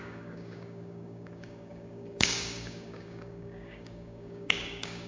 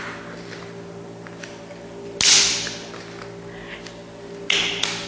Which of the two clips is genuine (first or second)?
second